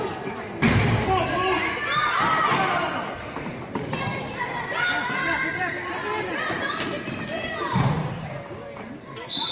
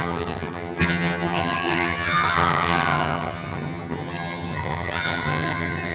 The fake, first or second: second